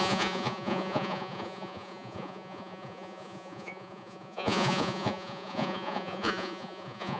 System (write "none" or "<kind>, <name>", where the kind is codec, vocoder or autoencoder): vocoder, Vocos